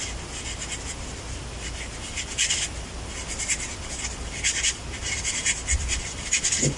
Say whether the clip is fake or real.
real